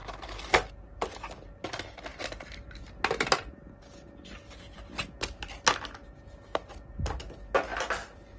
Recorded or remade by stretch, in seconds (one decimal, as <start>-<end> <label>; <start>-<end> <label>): 0.0-8.4 recorded